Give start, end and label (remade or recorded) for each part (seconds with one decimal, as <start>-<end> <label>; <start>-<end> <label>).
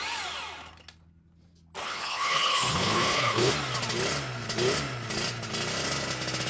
0.0-1.8 recorded; 1.8-3.5 remade; 3.5-6.5 recorded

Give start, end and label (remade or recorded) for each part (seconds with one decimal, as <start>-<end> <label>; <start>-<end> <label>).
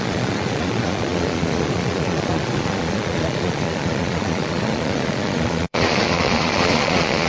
0.0-7.3 remade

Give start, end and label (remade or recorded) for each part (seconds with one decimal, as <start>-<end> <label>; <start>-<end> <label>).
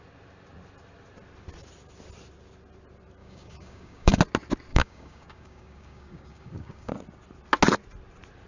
0.0-3.2 recorded; 3.2-4.2 remade; 4.2-4.7 recorded; 4.7-6.9 remade; 6.9-8.5 recorded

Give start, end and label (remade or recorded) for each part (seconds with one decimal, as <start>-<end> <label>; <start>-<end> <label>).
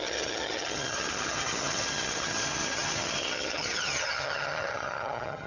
0.0-5.5 remade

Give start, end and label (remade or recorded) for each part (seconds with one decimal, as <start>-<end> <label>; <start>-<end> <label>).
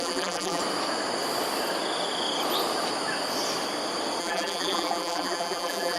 0.0-0.6 remade; 0.6-4.2 recorded; 4.2-6.0 remade